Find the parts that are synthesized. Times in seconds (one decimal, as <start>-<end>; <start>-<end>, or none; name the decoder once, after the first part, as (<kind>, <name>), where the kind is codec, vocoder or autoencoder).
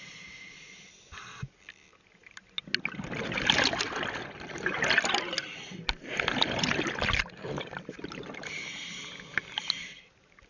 none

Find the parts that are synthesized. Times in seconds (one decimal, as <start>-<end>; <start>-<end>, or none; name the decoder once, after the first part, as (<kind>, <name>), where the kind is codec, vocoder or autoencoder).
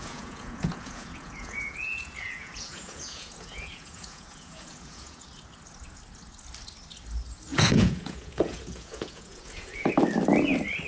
0.0-5.3 (vocoder, Vocos); 7.5-9.9